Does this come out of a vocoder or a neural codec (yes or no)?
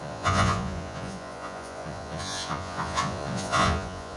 yes